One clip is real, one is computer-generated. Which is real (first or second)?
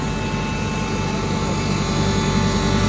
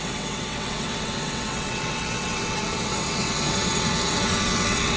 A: first